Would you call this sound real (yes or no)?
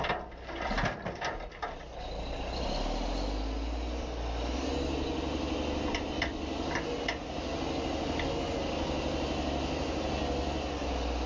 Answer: yes